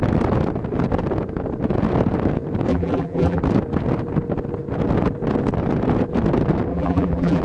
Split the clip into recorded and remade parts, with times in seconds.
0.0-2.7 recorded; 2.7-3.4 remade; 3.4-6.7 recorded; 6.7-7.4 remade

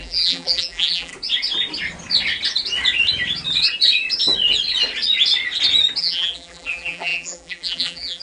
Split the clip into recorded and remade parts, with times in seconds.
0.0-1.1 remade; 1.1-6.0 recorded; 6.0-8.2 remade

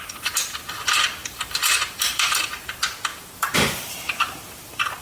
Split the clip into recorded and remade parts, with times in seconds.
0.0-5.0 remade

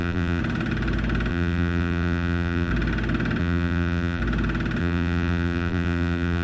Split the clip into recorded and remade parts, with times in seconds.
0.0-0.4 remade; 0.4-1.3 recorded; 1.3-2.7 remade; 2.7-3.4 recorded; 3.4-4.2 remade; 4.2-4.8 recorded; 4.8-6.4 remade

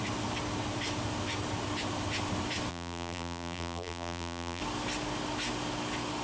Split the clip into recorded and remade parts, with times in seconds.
0.0-2.7 recorded; 2.7-4.6 remade; 4.6-6.2 recorded

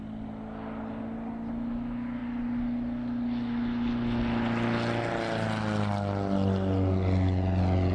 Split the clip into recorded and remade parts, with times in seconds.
0.0-7.9 recorded

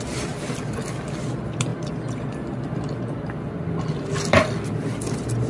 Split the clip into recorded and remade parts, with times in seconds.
0.0-5.5 recorded

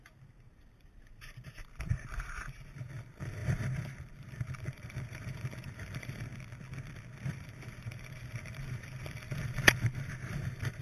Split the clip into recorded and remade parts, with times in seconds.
0.0-6.3 remade; 6.3-7.3 recorded; 7.3-10.8 remade